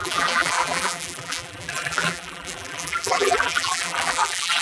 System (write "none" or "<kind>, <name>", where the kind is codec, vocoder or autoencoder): vocoder, BigVGAN v2